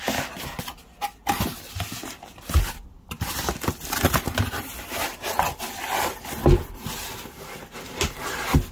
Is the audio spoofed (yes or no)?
no